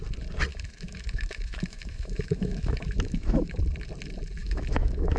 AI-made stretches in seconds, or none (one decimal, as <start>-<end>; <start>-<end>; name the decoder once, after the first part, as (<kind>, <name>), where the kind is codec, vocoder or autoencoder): 0.5-3.6 (autoencoder, DAC-VAE); 4.4-5.2